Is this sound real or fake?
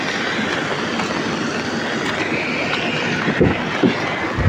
real